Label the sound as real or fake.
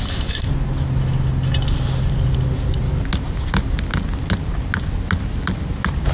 real